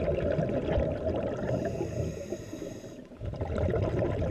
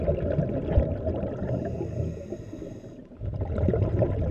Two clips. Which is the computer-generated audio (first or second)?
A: first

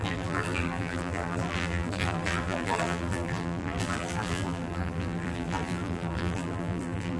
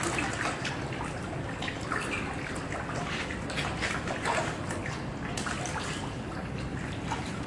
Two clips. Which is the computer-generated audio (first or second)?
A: first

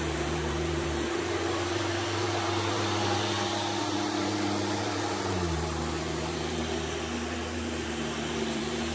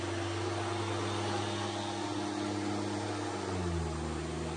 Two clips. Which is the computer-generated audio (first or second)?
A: first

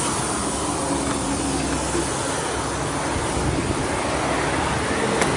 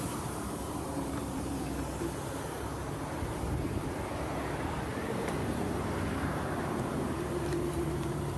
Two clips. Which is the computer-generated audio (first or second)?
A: second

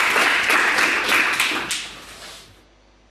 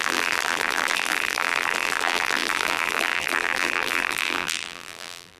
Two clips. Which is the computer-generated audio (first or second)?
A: second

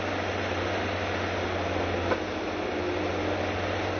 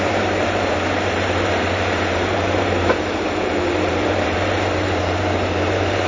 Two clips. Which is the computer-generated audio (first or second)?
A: second